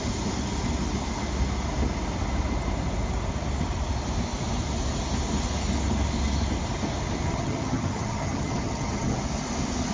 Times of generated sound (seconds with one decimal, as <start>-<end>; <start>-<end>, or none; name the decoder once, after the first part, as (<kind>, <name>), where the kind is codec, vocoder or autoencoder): 7.2-9.2 (vocoder, HiFi-GAN)